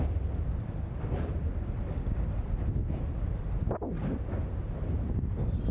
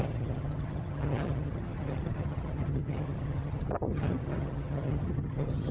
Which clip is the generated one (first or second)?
second